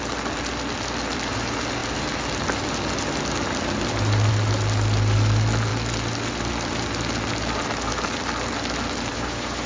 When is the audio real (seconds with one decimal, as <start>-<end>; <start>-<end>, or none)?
0.0-9.7